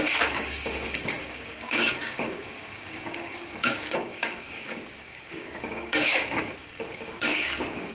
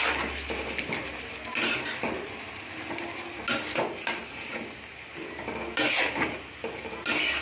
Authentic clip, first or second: second